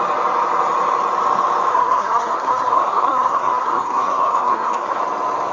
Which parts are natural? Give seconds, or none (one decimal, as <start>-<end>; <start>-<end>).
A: 0.0-1.7; 5.0-5.5